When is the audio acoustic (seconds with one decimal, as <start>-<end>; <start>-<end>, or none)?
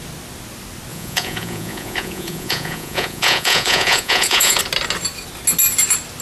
0.0-0.9; 4.6-6.2